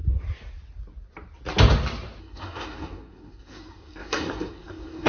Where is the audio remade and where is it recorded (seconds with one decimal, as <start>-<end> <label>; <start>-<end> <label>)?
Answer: 0.0-2.2 recorded; 2.2-5.1 remade